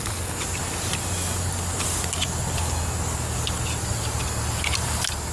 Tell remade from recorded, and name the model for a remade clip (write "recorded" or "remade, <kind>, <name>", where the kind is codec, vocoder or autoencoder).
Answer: recorded